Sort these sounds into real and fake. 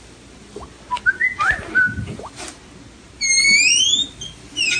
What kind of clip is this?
real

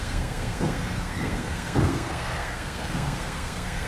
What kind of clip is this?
fake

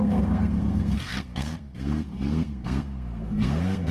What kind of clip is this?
fake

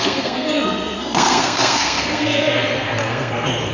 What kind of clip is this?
fake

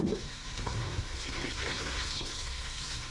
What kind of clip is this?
fake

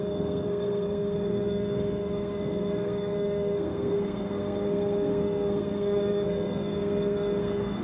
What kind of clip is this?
fake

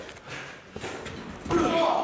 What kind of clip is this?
real